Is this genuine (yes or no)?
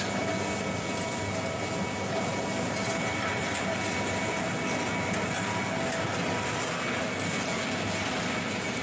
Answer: yes